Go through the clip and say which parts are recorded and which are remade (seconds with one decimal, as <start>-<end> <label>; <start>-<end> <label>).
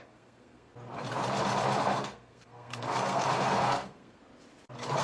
0.0-0.7 remade; 0.7-1.8 recorded; 1.8-4.2 remade; 4.2-5.0 recorded